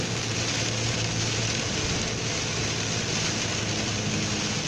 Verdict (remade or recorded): recorded